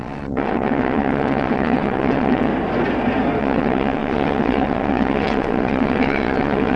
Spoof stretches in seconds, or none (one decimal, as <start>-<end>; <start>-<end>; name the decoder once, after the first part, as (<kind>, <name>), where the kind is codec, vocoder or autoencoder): 0.0-2.5 (vocoder, WaveNeXt); 3.4-6.8